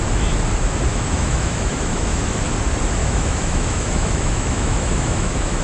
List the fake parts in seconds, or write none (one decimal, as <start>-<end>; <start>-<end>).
0.9-2.4; 3.0-5.6